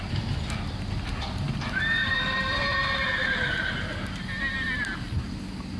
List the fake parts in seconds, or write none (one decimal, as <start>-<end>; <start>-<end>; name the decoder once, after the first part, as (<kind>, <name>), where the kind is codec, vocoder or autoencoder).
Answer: 2.0-2.6 (vocoder, BigVGAN v2)